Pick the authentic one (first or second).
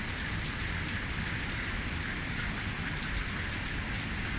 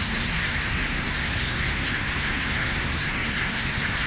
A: first